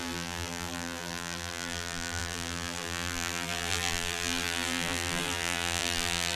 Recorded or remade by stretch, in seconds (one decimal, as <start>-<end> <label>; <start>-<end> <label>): 0.0-6.4 remade